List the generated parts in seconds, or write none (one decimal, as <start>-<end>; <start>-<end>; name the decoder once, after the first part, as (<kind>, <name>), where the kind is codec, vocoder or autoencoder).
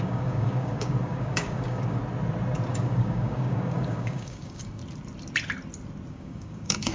0.0-2.0 (codec, DAC); 2.7-4.8; 6.1-6.9